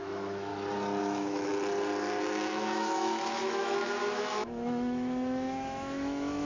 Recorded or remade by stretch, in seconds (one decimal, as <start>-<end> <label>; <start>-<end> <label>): 0.0-0.5 remade; 0.5-1.0 recorded; 1.0-1.5 remade; 1.5-2.2 recorded; 2.2-6.5 remade